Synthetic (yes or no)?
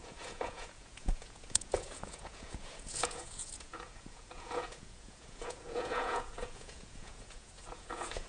yes